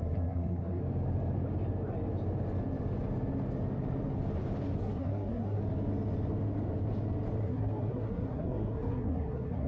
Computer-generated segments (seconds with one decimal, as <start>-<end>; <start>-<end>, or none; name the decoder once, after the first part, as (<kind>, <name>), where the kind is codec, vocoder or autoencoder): 0.0-0.8 (codec, SNAC); 4.8-5.6; 7.4-9.7